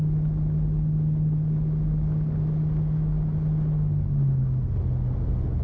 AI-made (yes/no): no